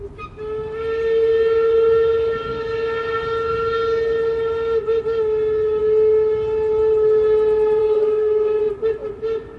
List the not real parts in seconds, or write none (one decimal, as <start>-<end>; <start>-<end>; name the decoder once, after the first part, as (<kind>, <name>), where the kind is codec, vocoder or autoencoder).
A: 7.8-8.6 (codec, DAC)